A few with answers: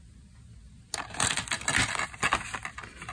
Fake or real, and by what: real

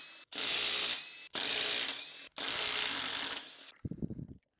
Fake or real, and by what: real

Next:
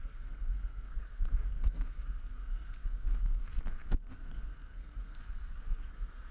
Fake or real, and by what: fake, codec, SNAC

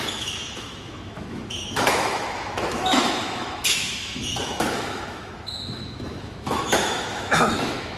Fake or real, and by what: fake, autoencoder, DAC-VAE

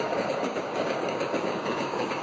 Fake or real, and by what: fake, codec, DAC